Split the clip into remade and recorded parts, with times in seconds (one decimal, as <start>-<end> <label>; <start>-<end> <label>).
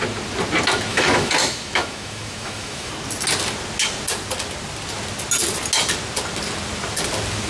0.0-0.9 recorded; 0.9-2.9 remade; 2.9-7.5 recorded